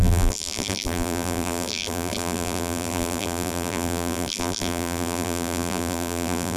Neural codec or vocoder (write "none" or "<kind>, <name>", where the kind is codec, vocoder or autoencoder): vocoder, BigVGAN v2